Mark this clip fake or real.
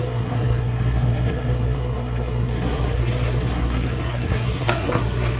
fake